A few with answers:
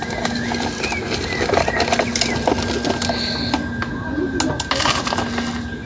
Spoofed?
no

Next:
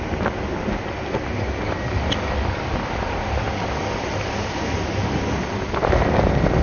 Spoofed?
no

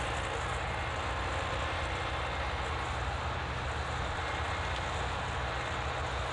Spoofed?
no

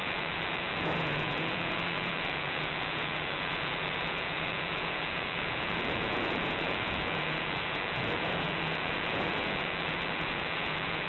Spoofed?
yes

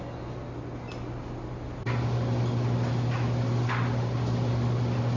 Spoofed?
no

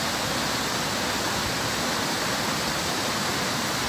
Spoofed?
no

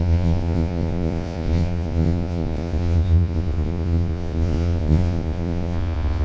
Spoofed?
yes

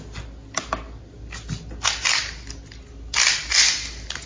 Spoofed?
no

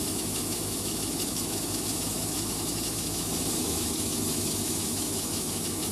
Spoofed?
yes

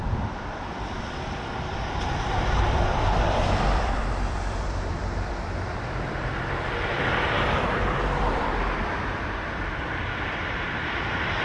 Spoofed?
yes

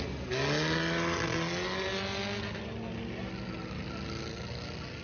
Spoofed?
no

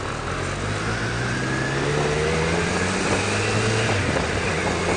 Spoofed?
no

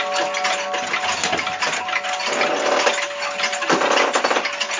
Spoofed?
no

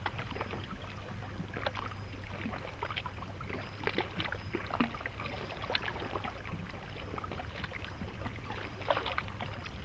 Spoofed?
no